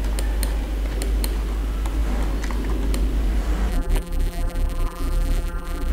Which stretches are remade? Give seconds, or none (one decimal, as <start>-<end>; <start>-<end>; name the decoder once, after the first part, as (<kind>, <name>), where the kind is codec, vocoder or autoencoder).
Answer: 3.7-5.9 (vocoder, BigVGAN v2)